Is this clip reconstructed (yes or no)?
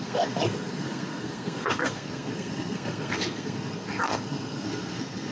yes